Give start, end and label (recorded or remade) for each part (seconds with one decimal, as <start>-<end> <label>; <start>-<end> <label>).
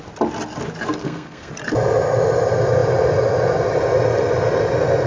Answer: 0.0-1.0 recorded; 1.0-1.5 remade; 1.5-5.1 recorded